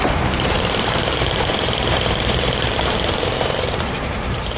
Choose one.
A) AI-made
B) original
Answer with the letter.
A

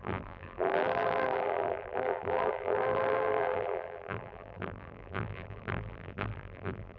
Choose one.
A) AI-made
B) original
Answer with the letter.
A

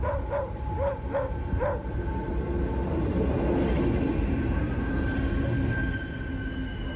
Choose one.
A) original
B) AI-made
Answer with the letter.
A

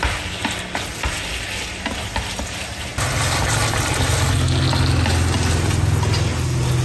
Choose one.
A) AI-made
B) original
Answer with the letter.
B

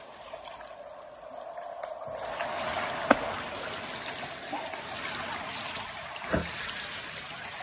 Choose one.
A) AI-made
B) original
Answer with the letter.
B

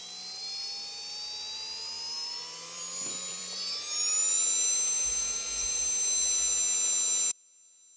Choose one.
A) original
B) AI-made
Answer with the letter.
B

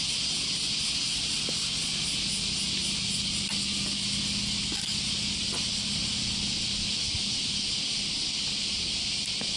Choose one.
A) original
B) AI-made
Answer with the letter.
A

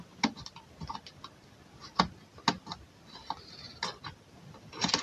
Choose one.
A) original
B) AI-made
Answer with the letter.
A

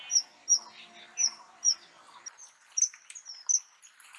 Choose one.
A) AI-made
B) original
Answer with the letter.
B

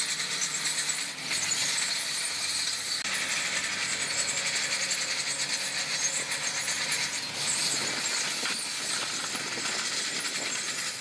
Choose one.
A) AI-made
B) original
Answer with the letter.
B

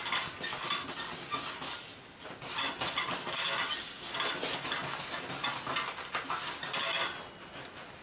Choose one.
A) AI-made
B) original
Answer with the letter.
B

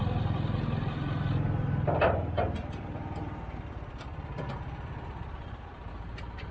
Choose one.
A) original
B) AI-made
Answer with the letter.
B